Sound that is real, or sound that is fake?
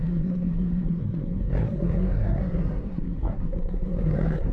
fake